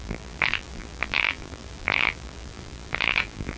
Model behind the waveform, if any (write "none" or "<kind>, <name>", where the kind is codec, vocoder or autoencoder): vocoder, BigVGAN v2